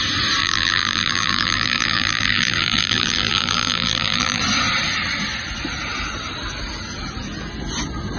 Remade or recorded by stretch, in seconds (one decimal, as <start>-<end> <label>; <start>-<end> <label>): 0.0-0.4 recorded; 0.4-4.4 remade; 4.4-8.2 recorded